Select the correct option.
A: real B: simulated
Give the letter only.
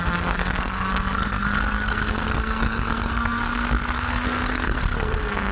B